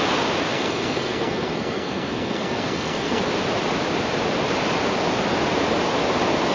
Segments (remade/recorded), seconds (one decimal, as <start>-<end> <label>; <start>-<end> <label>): 0.0-0.5 recorded; 0.5-3.2 remade; 3.2-6.5 recorded